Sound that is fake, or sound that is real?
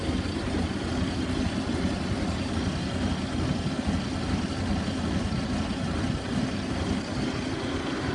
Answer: real